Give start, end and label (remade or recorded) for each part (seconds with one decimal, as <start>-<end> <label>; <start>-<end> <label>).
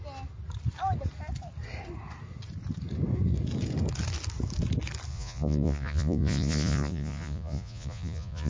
0.0-5.1 recorded; 5.1-8.5 remade